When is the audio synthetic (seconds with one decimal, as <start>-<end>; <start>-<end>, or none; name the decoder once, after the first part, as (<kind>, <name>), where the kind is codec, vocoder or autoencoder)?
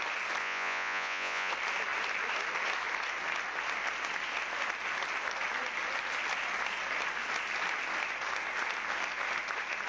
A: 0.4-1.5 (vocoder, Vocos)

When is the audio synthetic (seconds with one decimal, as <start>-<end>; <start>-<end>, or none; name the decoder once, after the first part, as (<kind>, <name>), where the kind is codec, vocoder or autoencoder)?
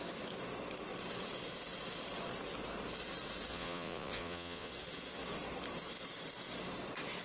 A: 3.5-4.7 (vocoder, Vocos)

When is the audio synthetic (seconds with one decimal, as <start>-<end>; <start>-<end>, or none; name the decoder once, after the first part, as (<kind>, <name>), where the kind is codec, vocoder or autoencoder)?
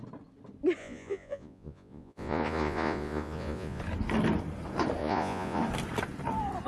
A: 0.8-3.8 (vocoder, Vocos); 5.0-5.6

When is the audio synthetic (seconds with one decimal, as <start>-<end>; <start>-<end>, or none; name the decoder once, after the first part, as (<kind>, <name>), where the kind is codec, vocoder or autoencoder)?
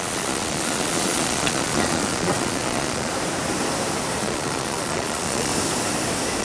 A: 0.0-3.1 (vocoder, Vocos); 4.2-5.5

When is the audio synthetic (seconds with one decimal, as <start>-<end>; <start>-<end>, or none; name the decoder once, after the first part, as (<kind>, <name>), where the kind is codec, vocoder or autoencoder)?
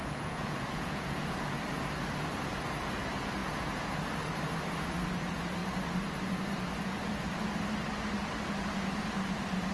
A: 0.0-1.5 (vocoder, Vocos); 3.4-3.9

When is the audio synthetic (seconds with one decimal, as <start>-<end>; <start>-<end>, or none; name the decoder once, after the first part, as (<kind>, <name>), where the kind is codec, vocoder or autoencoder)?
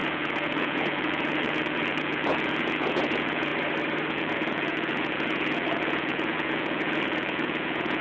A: 0.0-3.5 (vocoder, Vocos); 4.1-8.0